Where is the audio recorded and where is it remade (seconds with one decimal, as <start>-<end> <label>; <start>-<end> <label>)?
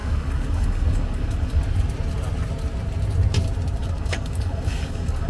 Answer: 0.0-1.6 remade; 1.6-3.8 recorded; 3.8-5.3 remade